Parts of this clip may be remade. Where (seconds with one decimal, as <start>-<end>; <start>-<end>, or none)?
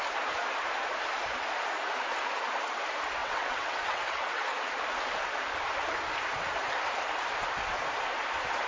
3.2-4.4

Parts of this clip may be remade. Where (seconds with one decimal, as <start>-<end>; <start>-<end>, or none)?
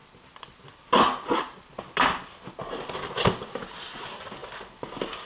none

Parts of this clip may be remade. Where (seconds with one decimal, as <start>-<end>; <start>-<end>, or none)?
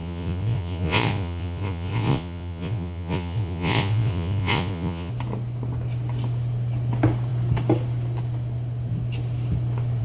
0.0-5.1